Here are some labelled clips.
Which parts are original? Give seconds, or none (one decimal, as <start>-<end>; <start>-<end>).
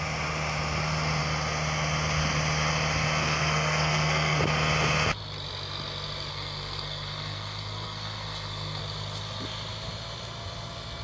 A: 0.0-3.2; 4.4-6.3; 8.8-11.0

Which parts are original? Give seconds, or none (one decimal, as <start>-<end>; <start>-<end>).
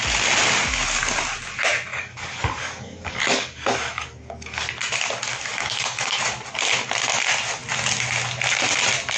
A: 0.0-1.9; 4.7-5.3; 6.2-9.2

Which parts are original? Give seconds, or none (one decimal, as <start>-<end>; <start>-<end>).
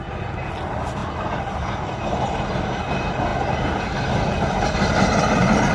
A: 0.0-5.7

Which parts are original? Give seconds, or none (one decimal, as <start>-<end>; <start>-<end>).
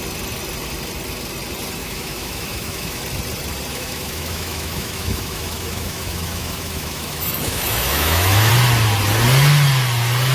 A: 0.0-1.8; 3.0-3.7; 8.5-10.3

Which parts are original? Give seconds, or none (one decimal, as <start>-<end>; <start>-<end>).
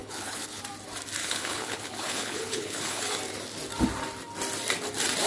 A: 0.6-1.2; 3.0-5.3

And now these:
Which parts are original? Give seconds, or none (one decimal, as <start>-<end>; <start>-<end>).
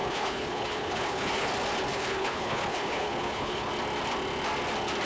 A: 1.5-1.9; 3.7-5.1